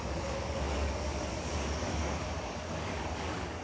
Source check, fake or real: fake